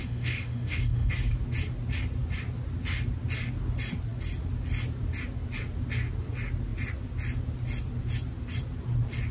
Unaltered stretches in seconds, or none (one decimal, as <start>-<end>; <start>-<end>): 1.1-9.3